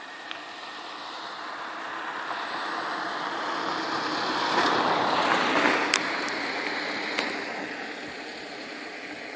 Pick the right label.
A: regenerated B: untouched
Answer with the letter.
B